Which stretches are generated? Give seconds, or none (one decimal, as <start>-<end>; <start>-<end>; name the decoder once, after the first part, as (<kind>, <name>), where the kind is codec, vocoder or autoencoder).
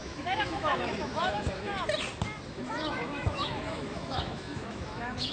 0.0-1.7 (autoencoder, DAC-VAE); 2.5-5.3